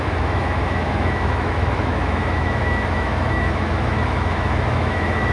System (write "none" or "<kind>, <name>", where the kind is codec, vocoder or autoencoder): autoencoder, DAC-VAE